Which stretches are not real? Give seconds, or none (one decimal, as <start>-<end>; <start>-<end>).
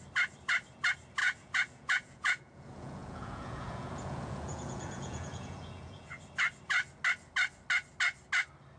1.2-6.2